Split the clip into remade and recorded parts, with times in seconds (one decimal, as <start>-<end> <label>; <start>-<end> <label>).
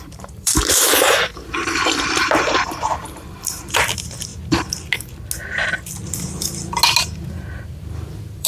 0.0-4.3 remade; 4.3-7.3 recorded; 7.3-8.5 remade